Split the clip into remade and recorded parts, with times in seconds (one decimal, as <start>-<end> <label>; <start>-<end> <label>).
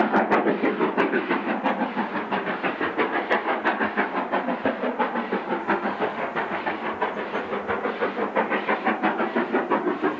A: 0.0-5.6 recorded; 5.6-6.6 remade; 6.6-10.2 recorded